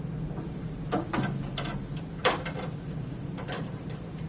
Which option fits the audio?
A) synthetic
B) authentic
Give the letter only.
B